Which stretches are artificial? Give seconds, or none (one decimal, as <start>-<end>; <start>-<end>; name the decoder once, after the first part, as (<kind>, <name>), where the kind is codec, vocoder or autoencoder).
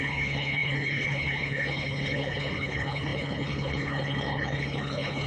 0.0-5.3 (codec, HILCodec)